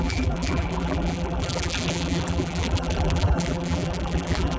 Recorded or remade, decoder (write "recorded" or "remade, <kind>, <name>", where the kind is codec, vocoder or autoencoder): remade, vocoder, BigVGAN v2